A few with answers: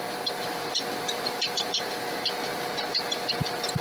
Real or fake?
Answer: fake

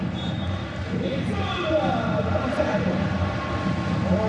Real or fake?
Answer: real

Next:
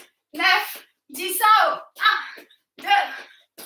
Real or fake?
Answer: real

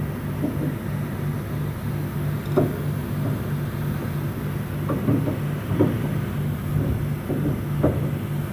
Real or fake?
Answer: real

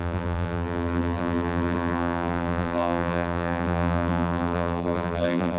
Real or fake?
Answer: fake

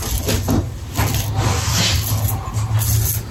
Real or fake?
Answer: real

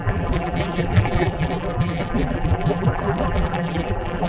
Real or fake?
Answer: fake